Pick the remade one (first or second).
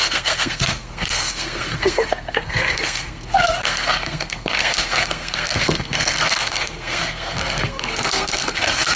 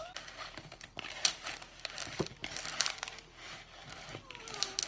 first